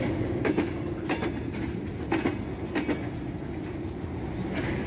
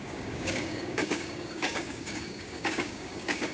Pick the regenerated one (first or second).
second